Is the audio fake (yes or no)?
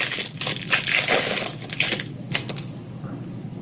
no